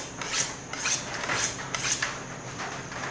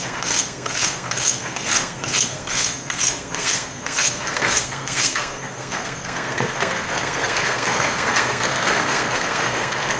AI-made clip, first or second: second